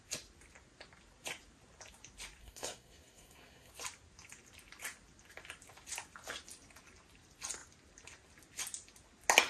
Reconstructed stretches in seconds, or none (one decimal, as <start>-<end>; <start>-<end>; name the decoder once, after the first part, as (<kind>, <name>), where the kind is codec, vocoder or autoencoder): 2.4-3.7 (codec, SNAC)